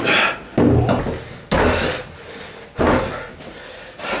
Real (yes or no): yes